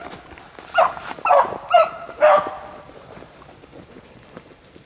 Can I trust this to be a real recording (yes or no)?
no